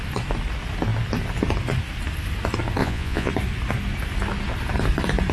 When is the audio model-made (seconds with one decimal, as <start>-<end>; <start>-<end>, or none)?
2.8-3.3